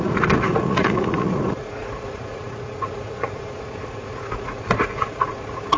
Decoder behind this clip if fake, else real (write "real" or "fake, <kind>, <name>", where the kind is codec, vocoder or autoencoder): fake, vocoder, Vocos